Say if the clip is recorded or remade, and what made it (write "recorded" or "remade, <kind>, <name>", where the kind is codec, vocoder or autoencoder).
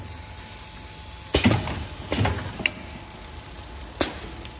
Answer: recorded